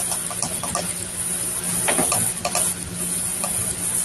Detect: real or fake real